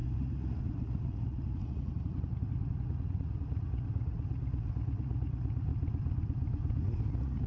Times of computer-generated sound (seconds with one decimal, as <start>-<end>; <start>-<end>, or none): 0.0-5.7; 7.1-7.5